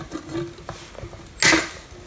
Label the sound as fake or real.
real